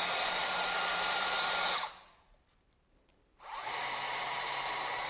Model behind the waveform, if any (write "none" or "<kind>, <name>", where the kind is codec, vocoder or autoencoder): vocoder, BigVGAN v2